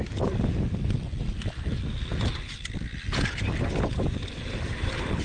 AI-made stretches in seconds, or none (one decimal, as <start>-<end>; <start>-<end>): none